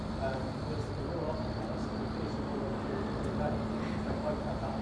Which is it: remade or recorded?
remade